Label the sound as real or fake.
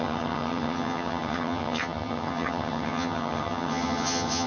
fake